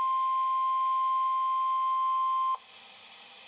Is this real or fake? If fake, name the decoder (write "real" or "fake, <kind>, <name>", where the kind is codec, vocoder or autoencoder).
real